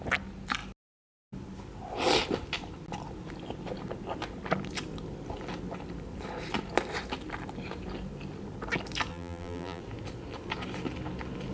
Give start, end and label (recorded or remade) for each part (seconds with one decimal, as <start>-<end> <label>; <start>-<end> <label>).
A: 0.0-9.1 recorded; 9.1-9.8 remade; 9.8-11.5 recorded